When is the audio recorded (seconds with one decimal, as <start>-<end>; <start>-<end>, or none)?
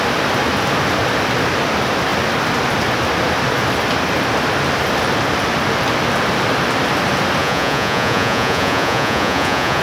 0.0-7.4